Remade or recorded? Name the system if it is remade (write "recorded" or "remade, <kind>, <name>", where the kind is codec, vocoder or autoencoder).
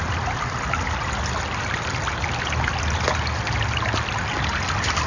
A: recorded